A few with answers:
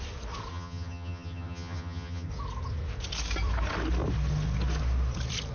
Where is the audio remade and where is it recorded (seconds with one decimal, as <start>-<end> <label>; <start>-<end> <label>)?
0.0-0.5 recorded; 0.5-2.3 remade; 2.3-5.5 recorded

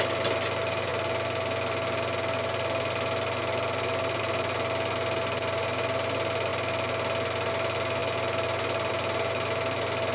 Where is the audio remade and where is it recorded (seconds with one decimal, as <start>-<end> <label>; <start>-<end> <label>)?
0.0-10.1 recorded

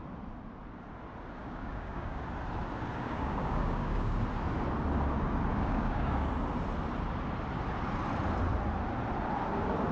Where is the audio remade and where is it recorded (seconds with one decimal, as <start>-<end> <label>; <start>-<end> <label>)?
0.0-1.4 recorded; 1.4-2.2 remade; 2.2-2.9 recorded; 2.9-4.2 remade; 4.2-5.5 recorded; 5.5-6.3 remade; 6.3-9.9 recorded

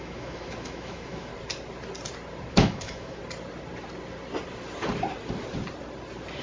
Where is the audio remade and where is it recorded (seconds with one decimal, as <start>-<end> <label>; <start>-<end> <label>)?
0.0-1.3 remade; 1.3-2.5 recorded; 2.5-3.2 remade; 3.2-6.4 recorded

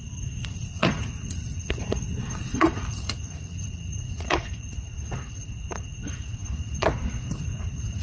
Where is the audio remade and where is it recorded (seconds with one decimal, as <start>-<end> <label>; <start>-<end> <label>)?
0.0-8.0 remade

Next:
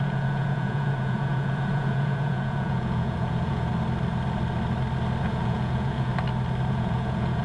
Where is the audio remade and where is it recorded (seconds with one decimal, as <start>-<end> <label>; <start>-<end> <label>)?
0.0-3.7 remade; 3.7-5.2 recorded; 5.2-6.1 remade; 6.1-6.7 recorded; 6.7-7.4 remade